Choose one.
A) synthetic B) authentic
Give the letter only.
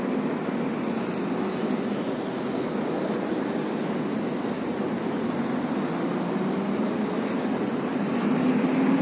B